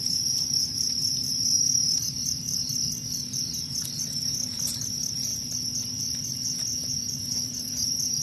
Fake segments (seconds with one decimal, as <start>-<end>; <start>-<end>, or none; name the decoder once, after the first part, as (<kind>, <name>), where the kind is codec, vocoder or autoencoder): 0.0-5.3 (vocoder, BigVGAN v2); 6.9-8.2